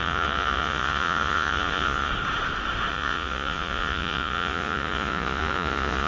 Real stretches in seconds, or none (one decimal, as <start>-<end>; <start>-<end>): 2.1-2.9